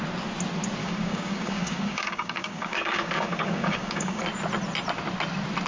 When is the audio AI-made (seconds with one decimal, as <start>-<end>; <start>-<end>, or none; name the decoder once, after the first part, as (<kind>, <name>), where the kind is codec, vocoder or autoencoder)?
0.8-4.2 (codec, DAC)